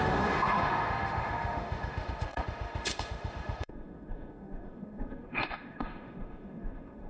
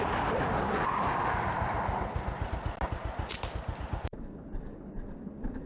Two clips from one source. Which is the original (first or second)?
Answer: second